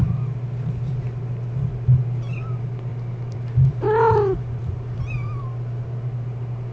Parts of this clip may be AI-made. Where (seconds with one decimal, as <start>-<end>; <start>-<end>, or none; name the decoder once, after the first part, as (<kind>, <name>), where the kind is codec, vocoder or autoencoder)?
2.9-5.4 (vocoder, BigVGAN v2)